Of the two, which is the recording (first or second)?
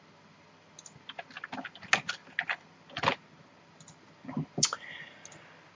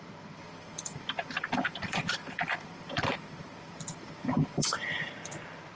first